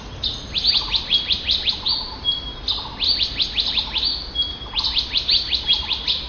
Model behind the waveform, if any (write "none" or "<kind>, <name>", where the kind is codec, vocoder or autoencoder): none